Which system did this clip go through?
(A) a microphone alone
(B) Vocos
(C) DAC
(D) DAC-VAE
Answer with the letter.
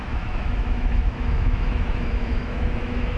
D